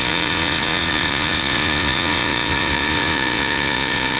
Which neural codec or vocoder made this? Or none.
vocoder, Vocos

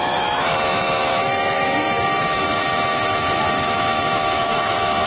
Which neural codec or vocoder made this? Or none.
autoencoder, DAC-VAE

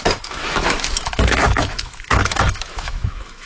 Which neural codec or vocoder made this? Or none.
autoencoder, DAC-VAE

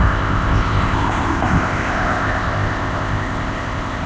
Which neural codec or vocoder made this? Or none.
codec, ZipCodec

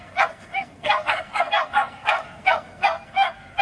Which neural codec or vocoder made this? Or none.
codec, SNAC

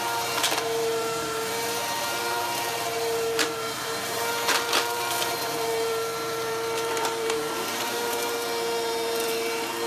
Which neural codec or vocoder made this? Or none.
vocoder, BigVGAN v2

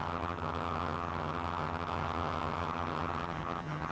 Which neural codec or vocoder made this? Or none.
vocoder, HiFi-GAN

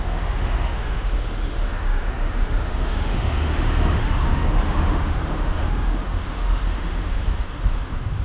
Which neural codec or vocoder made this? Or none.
autoencoder, DAC-VAE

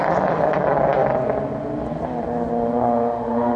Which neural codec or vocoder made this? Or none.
none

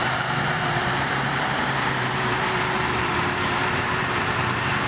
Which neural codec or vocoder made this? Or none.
vocoder, BigVGAN v2